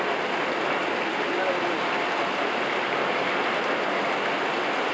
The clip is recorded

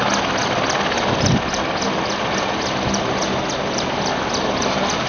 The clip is recorded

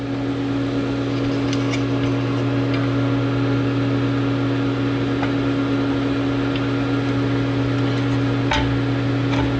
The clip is recorded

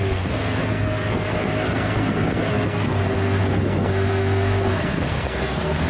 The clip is remade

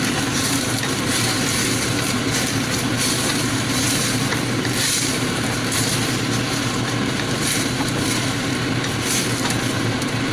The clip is remade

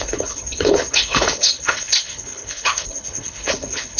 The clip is remade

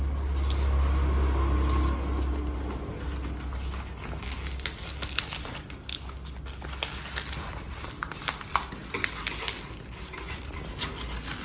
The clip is recorded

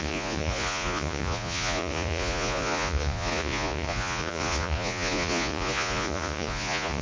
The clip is remade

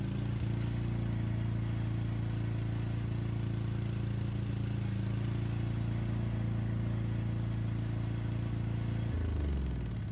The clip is recorded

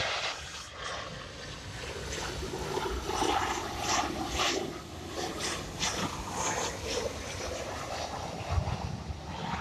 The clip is remade